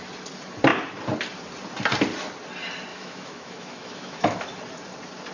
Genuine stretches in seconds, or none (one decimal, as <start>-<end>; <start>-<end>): 0.0-2.9; 4.5-5.3